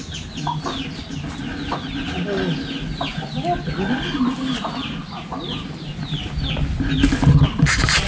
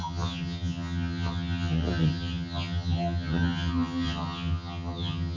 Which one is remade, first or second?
second